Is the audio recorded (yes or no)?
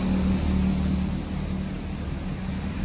yes